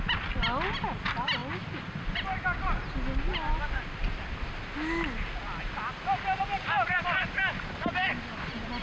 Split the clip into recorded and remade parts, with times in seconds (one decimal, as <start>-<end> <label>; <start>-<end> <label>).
0.0-8.8 recorded